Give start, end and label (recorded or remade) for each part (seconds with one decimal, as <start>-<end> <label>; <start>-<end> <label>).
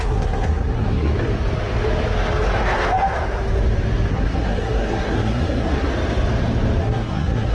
0.0-1.1 remade; 1.1-4.1 recorded; 4.1-5.9 remade; 5.9-6.8 recorded; 6.8-7.5 remade